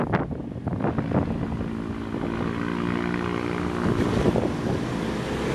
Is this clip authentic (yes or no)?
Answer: yes